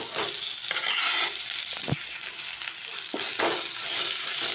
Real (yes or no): yes